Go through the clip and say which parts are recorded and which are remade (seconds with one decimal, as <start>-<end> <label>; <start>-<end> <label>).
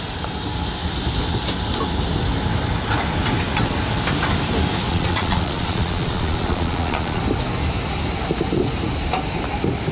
0.0-4.9 recorded; 4.9-7.2 remade; 7.2-9.9 recorded